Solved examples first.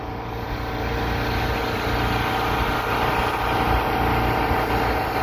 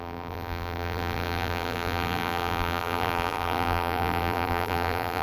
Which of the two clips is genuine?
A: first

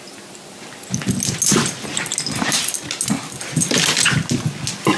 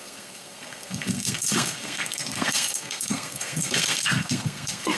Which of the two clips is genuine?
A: first